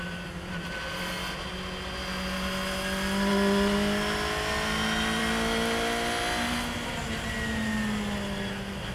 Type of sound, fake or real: real